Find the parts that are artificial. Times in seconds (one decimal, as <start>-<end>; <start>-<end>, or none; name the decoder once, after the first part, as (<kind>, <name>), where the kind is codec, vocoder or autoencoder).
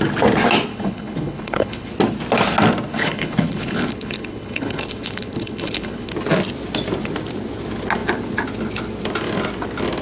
0.7-1.9 (codec, HILCodec); 2.9-6.1